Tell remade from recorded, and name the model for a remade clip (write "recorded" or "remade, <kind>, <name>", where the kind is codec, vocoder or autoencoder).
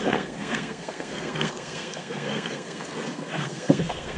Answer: remade, codec, SNAC